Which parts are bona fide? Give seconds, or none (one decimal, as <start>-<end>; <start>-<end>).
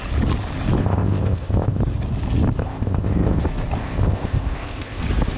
0.0-0.8; 1.8-2.6; 3.4-3.8; 5.0-5.4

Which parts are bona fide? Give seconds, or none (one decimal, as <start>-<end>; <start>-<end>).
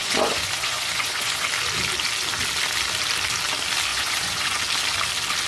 1.5-3.9; 4.6-5.5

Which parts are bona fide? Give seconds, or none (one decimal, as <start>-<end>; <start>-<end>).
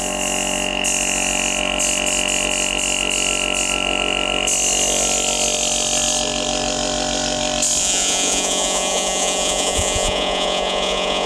0.0-7.8